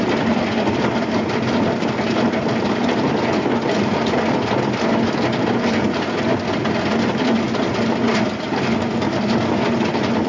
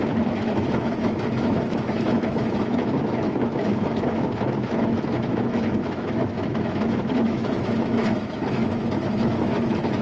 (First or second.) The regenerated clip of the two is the second